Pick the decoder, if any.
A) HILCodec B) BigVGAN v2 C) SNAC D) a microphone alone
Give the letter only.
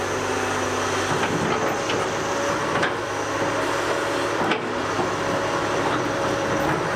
D